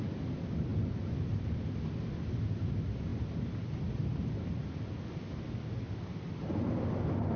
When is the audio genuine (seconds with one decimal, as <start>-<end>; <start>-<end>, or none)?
0.0-7.4